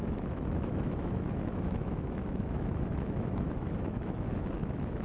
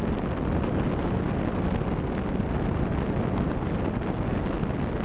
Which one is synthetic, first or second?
first